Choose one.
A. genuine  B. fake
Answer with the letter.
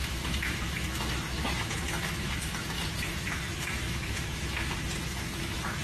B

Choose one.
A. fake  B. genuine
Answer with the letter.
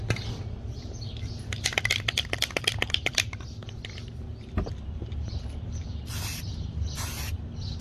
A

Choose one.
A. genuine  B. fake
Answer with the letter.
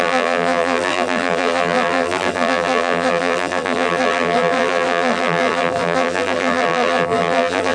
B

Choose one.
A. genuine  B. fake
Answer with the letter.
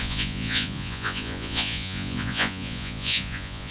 B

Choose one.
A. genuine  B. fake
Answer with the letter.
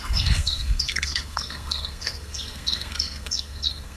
B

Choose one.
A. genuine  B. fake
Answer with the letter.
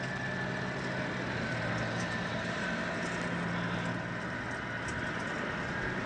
A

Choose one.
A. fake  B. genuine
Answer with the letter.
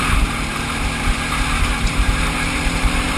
A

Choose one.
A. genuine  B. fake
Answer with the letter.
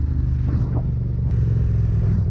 A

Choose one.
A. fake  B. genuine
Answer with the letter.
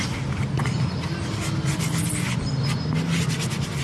B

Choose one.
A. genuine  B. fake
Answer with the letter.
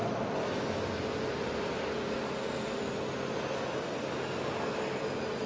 A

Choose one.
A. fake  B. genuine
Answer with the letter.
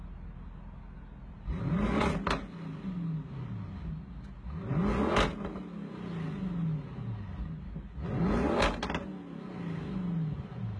B